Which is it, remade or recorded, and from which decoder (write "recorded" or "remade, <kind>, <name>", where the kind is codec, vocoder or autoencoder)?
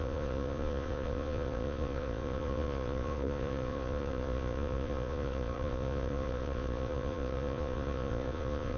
remade, vocoder, Vocos